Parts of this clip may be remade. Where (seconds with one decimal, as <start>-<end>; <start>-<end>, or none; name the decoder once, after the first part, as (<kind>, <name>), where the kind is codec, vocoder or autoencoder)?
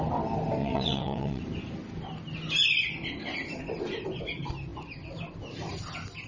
0.6-1.4 (vocoder, WaveNeXt)